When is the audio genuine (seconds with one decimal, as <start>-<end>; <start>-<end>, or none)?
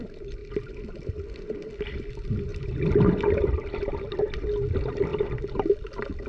0.0-0.4; 1.1-2.5; 4.0-5.1